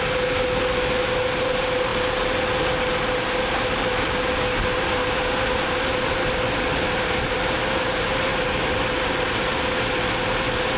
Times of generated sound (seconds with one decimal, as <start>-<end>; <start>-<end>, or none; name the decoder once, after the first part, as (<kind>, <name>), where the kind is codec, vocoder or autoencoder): none